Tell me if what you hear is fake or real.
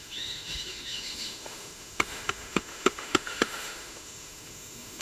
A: fake